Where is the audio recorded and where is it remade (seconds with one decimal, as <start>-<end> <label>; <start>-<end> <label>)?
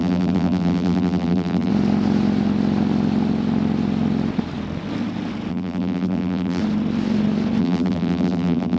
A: 0.0-1.7 remade; 1.7-5.5 recorded; 5.5-6.6 remade; 6.6-7.6 recorded; 7.6-8.8 remade